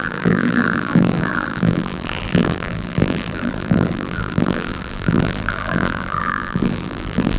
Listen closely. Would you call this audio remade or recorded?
remade